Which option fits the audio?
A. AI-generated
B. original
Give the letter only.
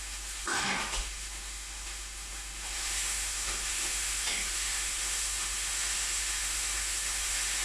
A